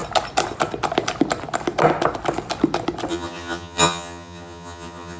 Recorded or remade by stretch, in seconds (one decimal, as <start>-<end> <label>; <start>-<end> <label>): 0.0-3.1 recorded; 3.1-5.2 remade